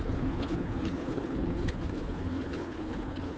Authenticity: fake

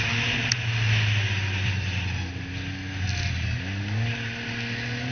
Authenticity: real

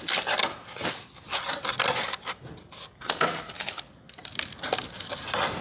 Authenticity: real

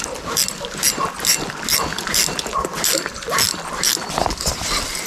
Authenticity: real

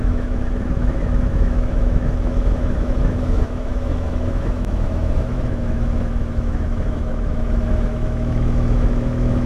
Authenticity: fake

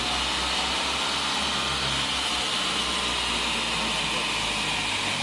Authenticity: real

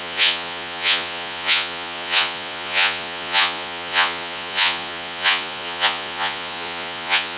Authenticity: fake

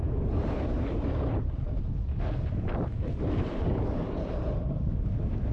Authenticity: real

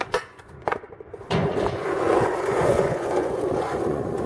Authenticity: fake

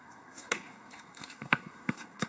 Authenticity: fake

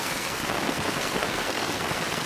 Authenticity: fake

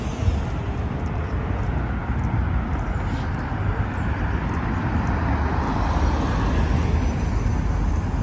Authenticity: real